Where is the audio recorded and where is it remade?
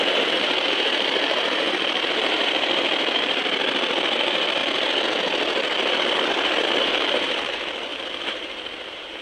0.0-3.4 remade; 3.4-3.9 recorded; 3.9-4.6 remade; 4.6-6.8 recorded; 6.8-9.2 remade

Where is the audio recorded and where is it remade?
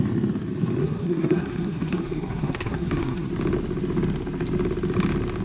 0.0-0.8 recorded; 0.8-3.3 remade; 3.3-5.4 recorded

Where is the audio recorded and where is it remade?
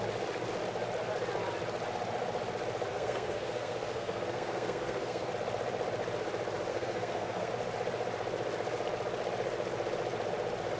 0.0-2.9 recorded; 2.9-5.3 remade; 5.3-6.7 recorded; 6.7-7.5 remade; 7.5-10.8 recorded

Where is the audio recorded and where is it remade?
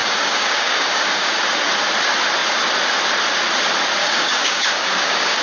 0.0-1.4 remade; 1.4-4.0 recorded; 4.0-5.4 remade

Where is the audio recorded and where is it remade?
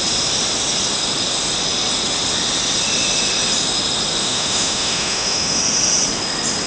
0.0-4.2 recorded; 4.2-5.6 remade; 5.6-6.7 recorded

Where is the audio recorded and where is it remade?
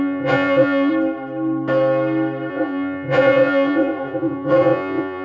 0.0-0.9 remade; 0.9-2.5 recorded; 2.5-5.2 remade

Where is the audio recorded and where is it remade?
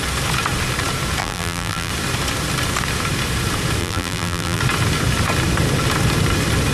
0.0-1.2 recorded; 1.2-1.9 remade; 1.9-3.8 recorded; 3.8-4.6 remade; 4.6-6.7 recorded